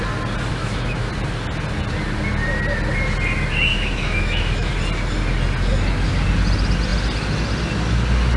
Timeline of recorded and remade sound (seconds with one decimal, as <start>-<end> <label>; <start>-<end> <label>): 0.0-0.5 recorded; 0.5-1.1 remade; 1.1-3.7 recorded; 3.7-4.7 remade; 4.7-8.4 recorded